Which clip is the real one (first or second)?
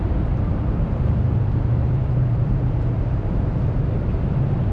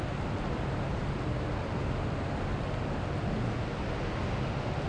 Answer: second